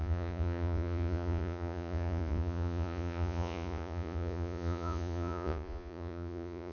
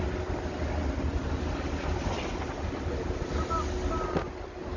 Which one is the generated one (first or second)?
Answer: first